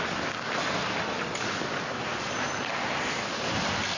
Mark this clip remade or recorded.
recorded